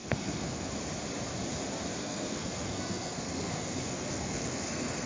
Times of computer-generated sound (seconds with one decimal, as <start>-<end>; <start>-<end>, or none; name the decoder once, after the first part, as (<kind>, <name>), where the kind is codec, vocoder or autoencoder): 0.0-0.7 (codec, SNAC); 2.0-5.1